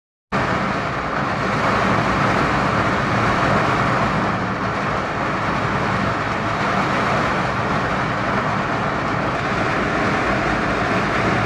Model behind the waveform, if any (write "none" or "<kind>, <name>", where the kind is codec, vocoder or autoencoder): none